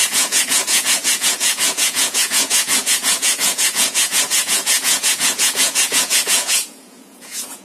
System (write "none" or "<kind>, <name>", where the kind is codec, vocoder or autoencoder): vocoder, Vocos